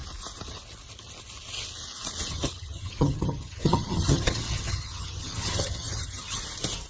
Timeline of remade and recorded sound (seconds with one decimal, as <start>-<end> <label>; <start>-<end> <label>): 0.0-2.3 recorded; 2.3-6.4 remade; 6.4-6.9 recorded